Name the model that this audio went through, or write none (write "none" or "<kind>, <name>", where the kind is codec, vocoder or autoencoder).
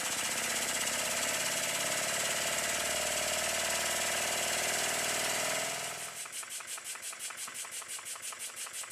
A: none